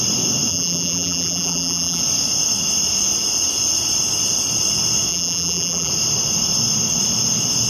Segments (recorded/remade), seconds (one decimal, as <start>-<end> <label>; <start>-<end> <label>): 0.0-0.5 recorded; 0.5-2.0 remade; 2.0-5.1 recorded; 5.1-5.9 remade; 5.9-7.7 recorded